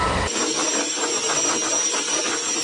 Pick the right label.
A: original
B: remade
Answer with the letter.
A